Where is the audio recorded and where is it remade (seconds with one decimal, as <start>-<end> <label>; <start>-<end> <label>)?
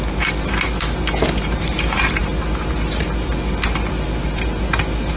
0.0-5.2 recorded